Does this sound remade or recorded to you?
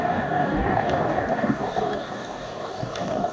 remade